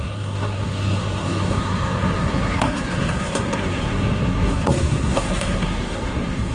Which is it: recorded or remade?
remade